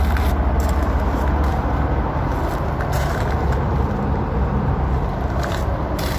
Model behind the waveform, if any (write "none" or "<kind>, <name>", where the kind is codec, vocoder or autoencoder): none